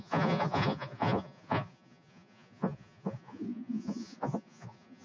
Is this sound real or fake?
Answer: fake